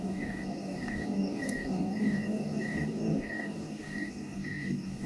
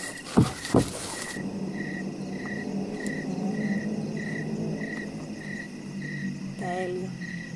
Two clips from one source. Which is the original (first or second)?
second